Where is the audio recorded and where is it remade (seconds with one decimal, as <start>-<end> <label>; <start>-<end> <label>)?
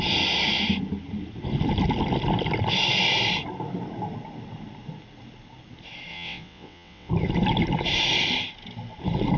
0.0-6.1 recorded; 6.1-7.1 remade; 7.1-9.4 recorded